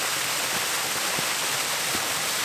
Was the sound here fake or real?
real